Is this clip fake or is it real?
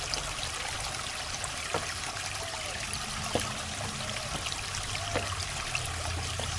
real